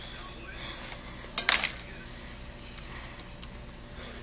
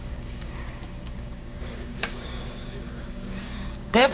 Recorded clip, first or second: first